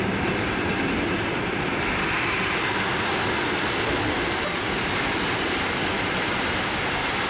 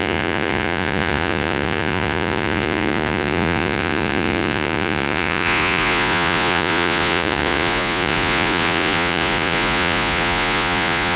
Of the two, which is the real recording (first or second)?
first